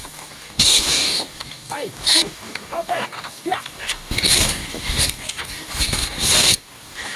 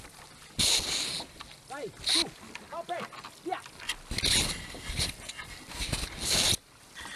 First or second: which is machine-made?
first